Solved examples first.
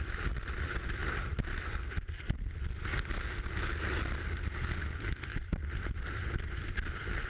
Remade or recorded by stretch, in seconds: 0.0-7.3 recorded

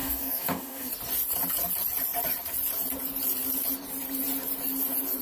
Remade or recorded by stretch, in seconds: 0.0-0.9 remade; 0.9-5.2 recorded

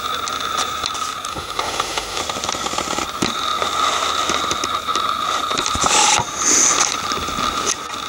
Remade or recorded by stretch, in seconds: 0.0-1.3 recorded; 1.3-2.2 remade; 2.2-8.1 recorded

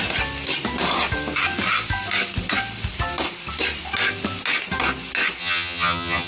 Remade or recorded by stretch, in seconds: 0.0-5.4 recorded; 5.4-6.3 remade

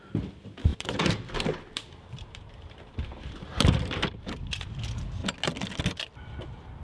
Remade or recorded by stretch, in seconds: 0.0-0.7 recorded; 0.7-4.8 remade; 4.8-6.8 recorded

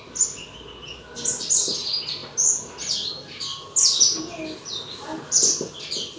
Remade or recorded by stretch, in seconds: 0.0-3.5 recorded; 3.5-4.4 remade; 4.4-5.1 recorded; 5.1-6.2 remade

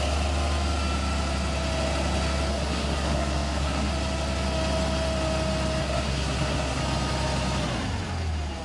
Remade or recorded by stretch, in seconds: 0.0-2.5 recorded; 2.5-3.9 remade; 3.9-5.8 recorded; 5.8-6.8 remade; 6.8-8.6 recorded